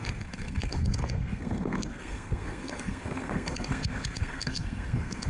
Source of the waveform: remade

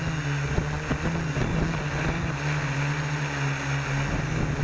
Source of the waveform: recorded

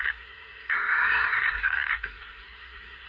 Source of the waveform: remade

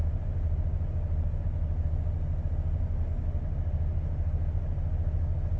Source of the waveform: recorded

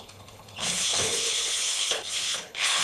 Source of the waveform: remade